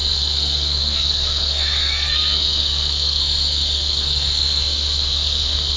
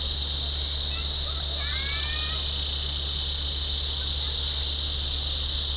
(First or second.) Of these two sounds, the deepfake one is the first